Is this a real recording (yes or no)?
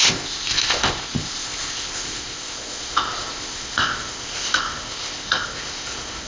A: no